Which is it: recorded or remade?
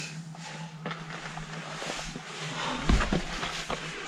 recorded